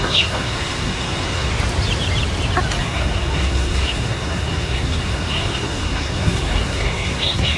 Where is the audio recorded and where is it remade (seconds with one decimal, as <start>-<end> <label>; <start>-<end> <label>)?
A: 0.0-1.5 remade; 1.5-2.8 recorded; 2.8-7.6 remade